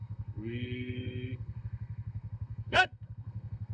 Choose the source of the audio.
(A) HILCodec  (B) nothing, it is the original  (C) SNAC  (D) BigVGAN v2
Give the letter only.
C